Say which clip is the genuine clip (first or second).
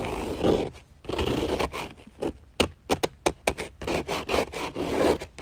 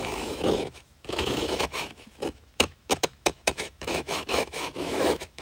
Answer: first